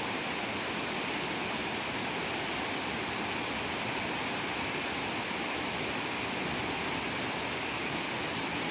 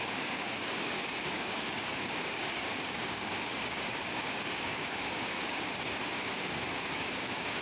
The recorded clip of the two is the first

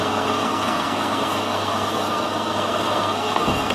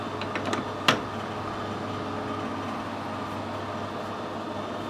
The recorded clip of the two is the second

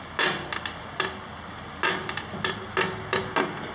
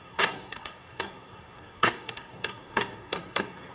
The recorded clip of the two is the first